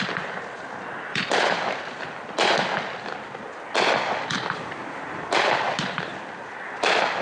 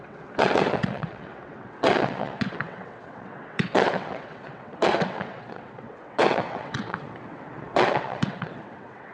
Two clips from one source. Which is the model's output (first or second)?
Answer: second